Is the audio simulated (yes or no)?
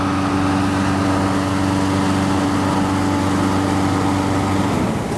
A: no